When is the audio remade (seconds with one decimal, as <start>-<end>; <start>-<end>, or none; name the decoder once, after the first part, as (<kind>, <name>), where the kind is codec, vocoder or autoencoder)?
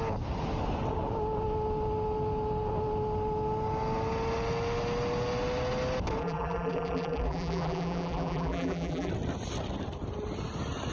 6.2-9.1 (vocoder, BigVGAN v2)